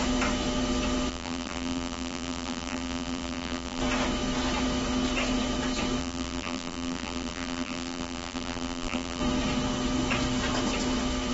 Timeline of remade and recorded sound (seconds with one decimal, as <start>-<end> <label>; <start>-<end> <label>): 0.0-1.1 recorded; 1.1-3.8 remade; 3.8-6.0 recorded; 6.0-9.2 remade; 9.2-11.3 recorded